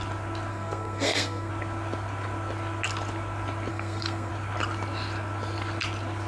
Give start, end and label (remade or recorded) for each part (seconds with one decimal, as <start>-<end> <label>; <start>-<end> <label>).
0.0-0.5 recorded; 0.5-1.5 remade; 1.5-3.7 recorded; 3.7-4.3 remade; 4.3-6.3 recorded